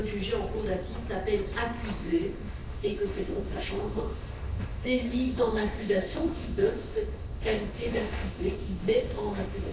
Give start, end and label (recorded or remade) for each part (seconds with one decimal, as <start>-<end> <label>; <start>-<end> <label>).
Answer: 0.0-2.0 recorded; 2.0-9.7 remade